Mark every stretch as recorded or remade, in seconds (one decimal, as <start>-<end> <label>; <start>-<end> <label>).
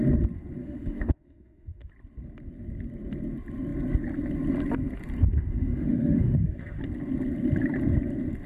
0.0-0.6 recorded; 0.6-1.9 remade; 1.9-5.3 recorded; 5.3-6.8 remade; 6.8-8.5 recorded